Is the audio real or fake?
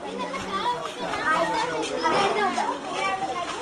fake